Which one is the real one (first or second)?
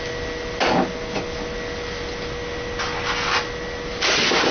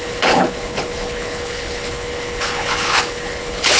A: first